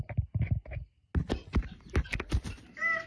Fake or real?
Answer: real